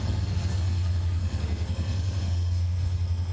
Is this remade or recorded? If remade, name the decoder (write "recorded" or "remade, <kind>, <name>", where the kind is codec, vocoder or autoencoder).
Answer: remade, codec, SNAC